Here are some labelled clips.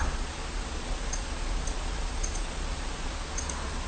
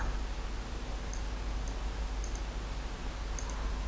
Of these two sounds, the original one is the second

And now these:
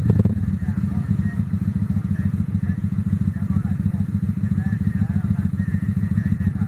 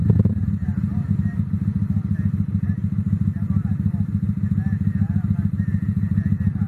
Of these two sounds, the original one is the second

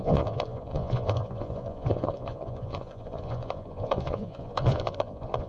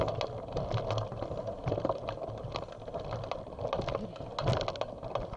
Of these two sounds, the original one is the second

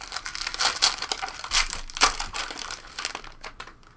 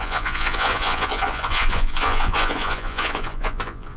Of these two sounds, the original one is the first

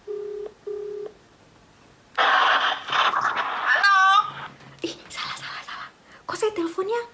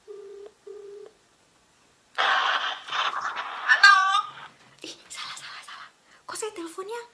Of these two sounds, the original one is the first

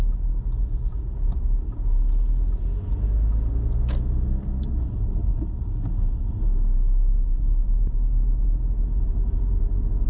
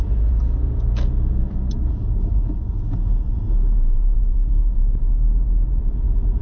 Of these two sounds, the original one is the first